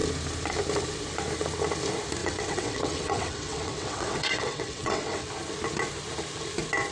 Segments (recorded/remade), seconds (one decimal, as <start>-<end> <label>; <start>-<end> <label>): 0.0-2.2 recorded; 2.2-5.3 remade; 5.3-6.9 recorded